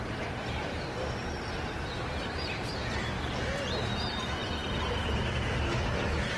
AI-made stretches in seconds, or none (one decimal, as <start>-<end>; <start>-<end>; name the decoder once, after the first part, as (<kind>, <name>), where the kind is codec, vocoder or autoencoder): none